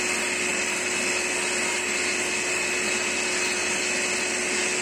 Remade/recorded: recorded